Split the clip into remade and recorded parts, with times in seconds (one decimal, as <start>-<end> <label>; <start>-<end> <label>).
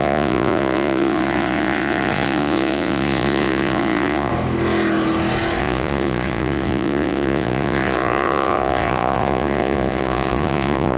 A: 0.0-4.3 remade; 4.3-5.6 recorded; 5.6-11.0 remade